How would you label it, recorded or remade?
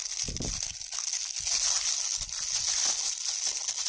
recorded